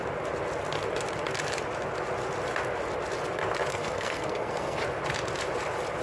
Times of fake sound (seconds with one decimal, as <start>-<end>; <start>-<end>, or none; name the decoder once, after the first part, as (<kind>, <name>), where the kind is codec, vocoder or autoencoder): 3.7-4.8 (codec, SNAC)